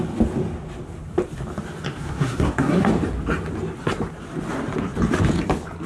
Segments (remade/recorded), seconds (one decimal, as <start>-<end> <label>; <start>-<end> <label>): 0.0-1.9 recorded; 1.9-2.9 remade; 2.9-5.9 recorded